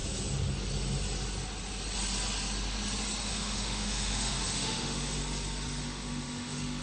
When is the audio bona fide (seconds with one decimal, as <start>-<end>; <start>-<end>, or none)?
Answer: 0.0-3.2; 5.2-5.8